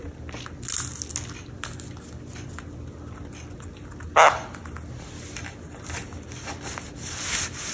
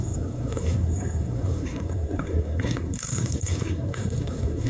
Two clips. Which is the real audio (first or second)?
first